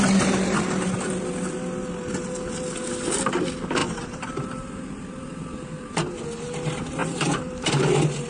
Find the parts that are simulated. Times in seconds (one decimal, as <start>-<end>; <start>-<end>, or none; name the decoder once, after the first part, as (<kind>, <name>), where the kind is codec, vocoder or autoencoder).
3.8-6.2 (vocoder, BigVGAN v2); 7.0-7.7